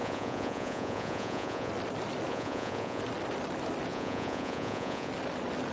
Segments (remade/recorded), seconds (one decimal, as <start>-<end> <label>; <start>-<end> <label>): 0.0-1.7 remade; 1.7-2.3 recorded; 2.3-3.0 remade; 3.0-3.9 recorded; 3.9-5.1 remade; 5.1-5.7 recorded